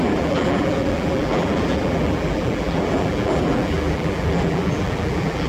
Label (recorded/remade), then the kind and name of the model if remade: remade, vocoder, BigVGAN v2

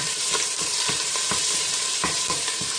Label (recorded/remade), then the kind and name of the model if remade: remade, vocoder, BigVGAN v2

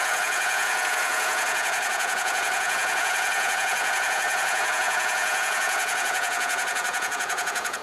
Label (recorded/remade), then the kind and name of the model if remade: remade, vocoder, Vocos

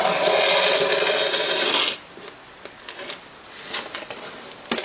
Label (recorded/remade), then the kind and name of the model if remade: recorded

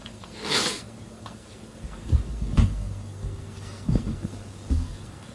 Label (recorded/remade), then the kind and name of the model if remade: remade, codec, SNAC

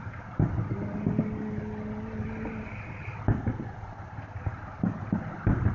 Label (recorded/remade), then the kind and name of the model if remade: recorded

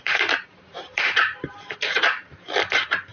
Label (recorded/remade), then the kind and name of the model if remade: remade, vocoder, BigVGAN v2